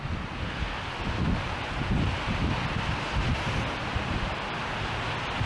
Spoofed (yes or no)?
no